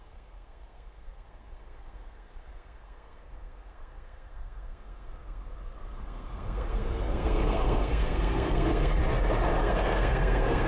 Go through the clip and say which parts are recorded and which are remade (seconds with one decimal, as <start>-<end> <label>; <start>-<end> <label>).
0.0-9.0 remade; 9.0-9.6 recorded; 9.6-10.7 remade